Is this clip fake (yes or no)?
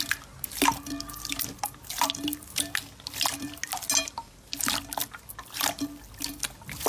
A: no